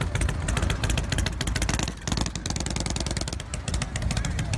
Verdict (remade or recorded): recorded